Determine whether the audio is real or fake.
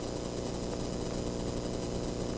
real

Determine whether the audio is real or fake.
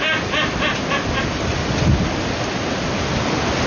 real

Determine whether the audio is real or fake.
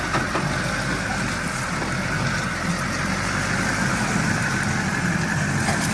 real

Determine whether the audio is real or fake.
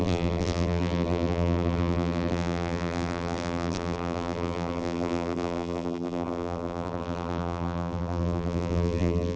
fake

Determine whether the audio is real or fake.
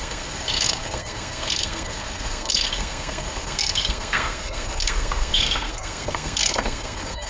fake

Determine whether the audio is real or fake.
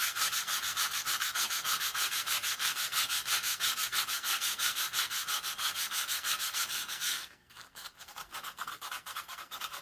fake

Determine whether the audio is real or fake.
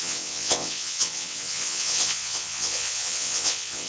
fake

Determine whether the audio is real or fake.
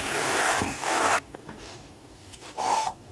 fake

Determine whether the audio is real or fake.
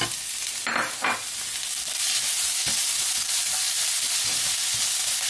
real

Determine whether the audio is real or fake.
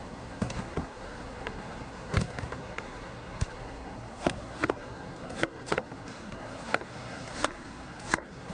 fake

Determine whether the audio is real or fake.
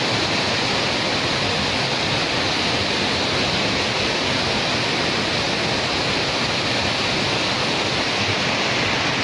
real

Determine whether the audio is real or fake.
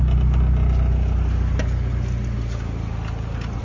real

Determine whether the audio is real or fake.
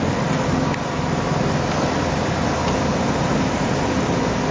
real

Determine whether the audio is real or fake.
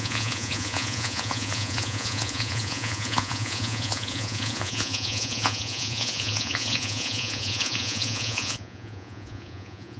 fake